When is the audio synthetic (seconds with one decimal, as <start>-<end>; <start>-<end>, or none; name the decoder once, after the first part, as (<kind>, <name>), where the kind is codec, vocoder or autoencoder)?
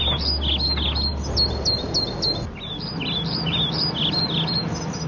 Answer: none